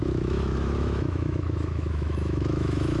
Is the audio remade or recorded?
remade